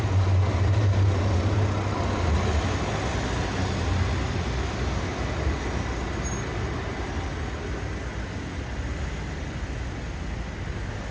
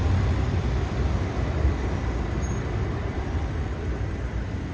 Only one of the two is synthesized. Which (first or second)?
second